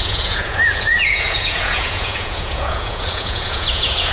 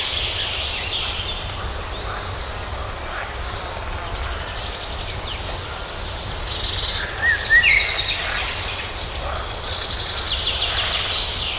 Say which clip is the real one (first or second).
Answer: second